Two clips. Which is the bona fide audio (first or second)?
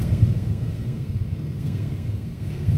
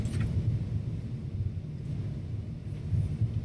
second